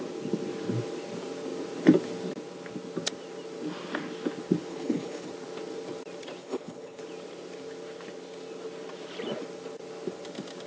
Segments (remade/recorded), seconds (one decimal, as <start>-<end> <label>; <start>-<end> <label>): 0.0-4.7 recorded; 4.7-5.3 remade; 5.3-6.4 recorded; 6.4-7.0 remade; 7.0-10.7 recorded